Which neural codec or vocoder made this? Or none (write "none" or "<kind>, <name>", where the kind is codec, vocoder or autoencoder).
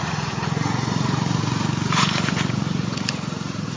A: vocoder, Vocos